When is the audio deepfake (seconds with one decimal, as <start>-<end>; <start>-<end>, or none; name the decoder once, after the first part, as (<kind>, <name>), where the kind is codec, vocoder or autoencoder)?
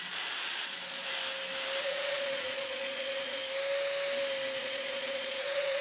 0.0-1.1 (vocoder, Vocos); 1.8-3.4; 4.6-5.8